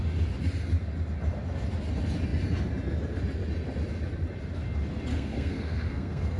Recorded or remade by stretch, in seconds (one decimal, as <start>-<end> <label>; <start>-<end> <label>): 0.0-5.1 recorded; 5.1-6.4 remade